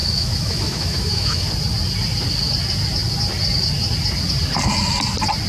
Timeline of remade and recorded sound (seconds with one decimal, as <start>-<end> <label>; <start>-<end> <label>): 0.0-1.5 remade; 1.5-5.5 recorded